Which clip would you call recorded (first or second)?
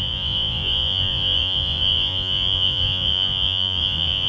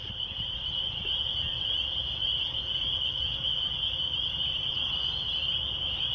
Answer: second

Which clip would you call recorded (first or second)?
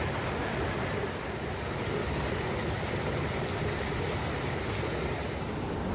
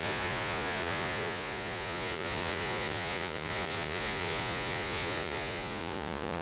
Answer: first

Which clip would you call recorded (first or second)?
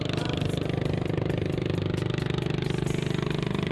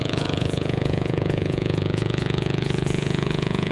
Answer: first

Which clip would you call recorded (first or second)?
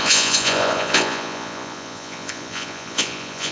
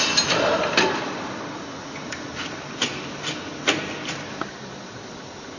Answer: second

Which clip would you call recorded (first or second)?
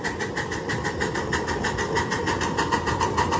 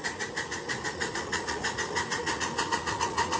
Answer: first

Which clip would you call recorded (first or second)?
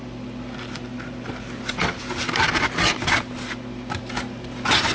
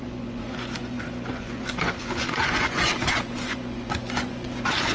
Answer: first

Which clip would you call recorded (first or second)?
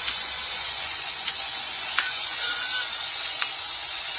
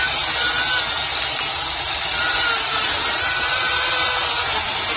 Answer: second